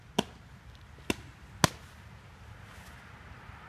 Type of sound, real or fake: real